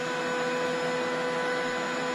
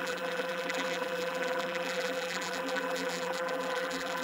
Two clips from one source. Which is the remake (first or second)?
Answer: second